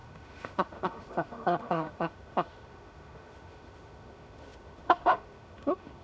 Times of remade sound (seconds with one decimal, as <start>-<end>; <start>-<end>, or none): 0.0-6.0